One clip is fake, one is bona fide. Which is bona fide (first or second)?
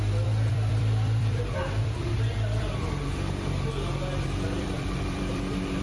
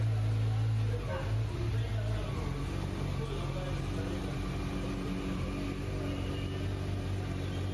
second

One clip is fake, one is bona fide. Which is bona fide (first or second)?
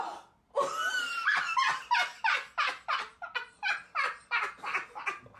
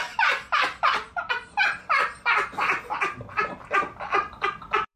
first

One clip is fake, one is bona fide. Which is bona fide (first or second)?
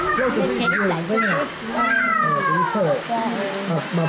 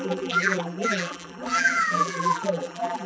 first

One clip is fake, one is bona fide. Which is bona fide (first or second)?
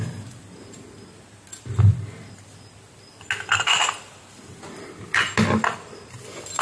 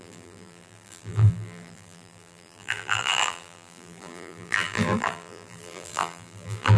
first